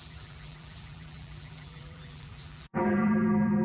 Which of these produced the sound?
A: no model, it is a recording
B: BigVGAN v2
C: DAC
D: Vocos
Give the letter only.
B